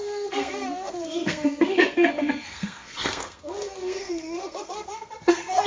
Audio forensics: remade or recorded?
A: remade